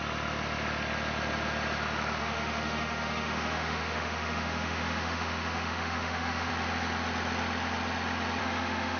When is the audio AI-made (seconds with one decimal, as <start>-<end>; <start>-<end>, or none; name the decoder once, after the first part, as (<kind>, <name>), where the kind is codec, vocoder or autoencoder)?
2.2-6.5 (autoencoder, DAC-VAE); 8.4-9.0